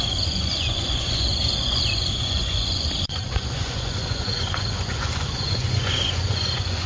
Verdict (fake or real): fake